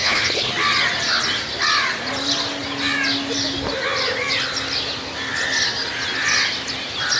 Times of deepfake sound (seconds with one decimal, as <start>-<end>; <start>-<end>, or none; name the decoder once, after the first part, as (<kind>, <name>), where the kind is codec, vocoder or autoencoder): 0.0-0.5 (codec, HILCodec)